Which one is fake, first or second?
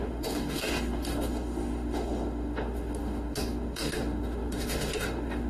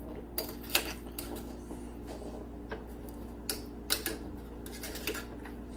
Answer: first